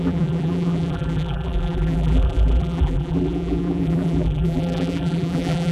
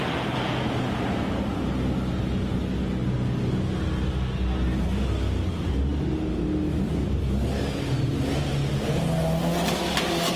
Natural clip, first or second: second